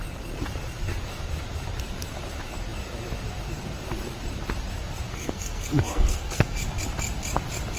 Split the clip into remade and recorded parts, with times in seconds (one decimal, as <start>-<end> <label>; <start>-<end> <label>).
0.0-5.1 recorded; 5.1-6.6 remade; 6.6-7.8 recorded